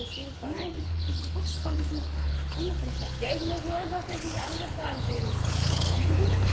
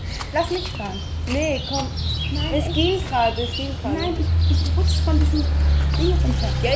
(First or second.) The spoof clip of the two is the first